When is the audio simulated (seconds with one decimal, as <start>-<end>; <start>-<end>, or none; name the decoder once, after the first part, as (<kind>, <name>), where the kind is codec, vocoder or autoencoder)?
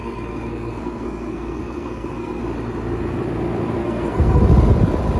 0.0-2.4 (codec, SNAC); 3.8-4.4